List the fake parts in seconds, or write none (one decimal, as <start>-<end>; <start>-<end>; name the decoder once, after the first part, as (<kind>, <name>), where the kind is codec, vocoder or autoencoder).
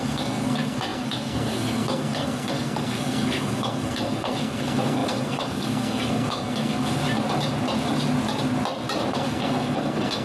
0.0-7.0 (codec, SNAC); 9.1-10.2